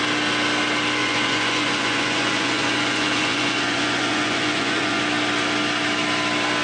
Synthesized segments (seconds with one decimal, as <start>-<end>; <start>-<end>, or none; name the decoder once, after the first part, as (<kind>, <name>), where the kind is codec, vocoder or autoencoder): 1.0-5.0 (vocoder, Vocos)